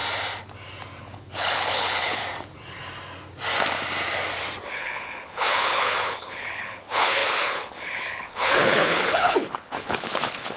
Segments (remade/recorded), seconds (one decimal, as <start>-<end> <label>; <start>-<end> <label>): 0.0-1.0 recorded; 1.0-2.2 remade; 2.2-4.7 recorded; 4.7-10.6 remade